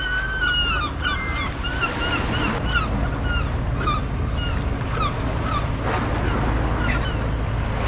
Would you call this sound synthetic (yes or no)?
no